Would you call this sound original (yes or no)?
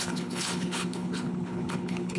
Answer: no